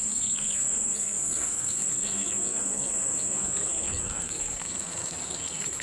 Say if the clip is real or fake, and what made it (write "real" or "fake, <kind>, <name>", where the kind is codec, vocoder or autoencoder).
fake, codec, SNAC